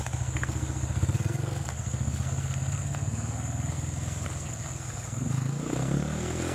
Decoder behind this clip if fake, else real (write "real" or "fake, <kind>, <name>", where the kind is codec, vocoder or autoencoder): fake, codec, SNAC